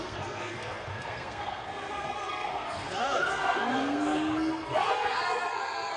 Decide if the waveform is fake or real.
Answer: fake